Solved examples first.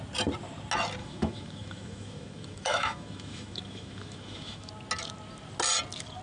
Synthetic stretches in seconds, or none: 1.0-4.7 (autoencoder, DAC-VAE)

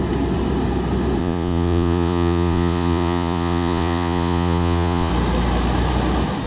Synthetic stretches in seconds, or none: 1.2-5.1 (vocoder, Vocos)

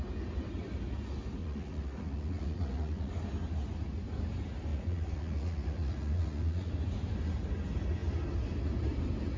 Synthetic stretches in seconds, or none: 1.4-3.1 (vocoder, Vocos); 4.7-6.7

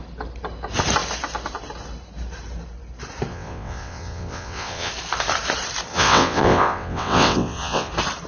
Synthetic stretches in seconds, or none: 3.3-4.9 (vocoder, WaveNeXt); 5.9-7.9